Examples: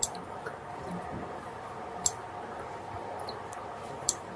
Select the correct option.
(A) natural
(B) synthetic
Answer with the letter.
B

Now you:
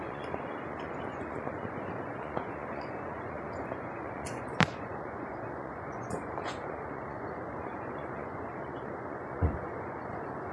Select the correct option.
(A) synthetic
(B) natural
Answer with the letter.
A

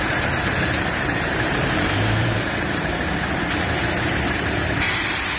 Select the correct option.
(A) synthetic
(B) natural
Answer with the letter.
A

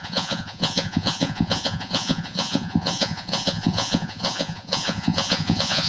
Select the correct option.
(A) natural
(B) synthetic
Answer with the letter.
B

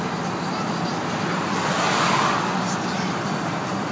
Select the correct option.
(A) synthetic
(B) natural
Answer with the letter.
B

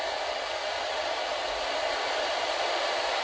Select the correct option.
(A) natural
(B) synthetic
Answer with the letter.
B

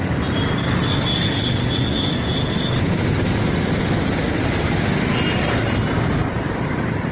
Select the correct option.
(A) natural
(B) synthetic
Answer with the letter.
A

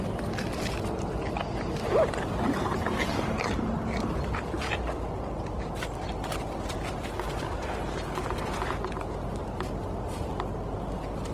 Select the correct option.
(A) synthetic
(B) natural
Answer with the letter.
B